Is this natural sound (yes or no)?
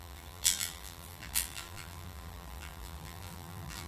no